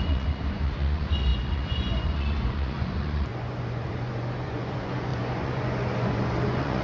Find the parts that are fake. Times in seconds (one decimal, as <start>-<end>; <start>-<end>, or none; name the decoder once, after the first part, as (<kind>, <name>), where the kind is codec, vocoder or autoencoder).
0.0-6.8 (vocoder, Vocos)